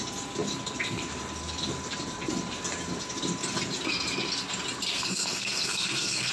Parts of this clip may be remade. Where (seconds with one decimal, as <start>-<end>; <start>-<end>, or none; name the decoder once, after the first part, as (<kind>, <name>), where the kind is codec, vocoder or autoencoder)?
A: 4.9-6.3 (codec, SNAC)